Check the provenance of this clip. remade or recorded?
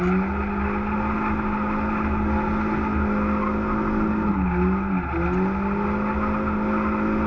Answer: recorded